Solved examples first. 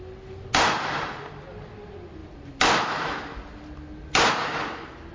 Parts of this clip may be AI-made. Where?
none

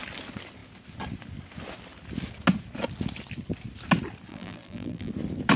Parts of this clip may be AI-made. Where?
4.3-5.1

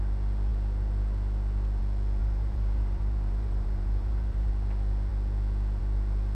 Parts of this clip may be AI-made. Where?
2.2-4.5

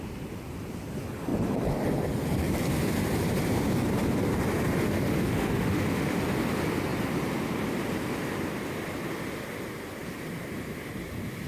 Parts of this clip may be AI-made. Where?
4.8-6.2

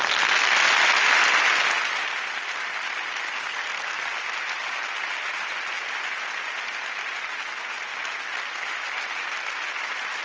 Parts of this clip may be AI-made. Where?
3.4-4.1

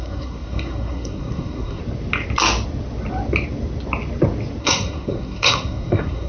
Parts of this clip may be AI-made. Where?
0.0-1.8; 4.6-6.3

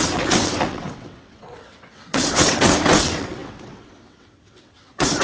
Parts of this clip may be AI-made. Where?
0.0-5.2